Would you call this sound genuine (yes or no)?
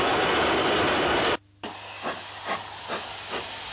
yes